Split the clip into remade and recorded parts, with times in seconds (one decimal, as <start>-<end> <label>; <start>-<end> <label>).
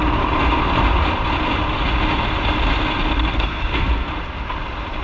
0.0-3.3 recorded; 3.3-4.1 remade; 4.1-5.0 recorded